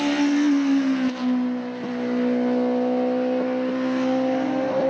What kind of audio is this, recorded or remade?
recorded